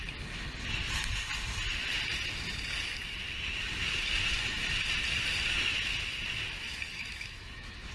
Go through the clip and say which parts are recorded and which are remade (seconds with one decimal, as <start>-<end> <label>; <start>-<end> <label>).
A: 0.0-6.9 recorded; 6.9-7.9 remade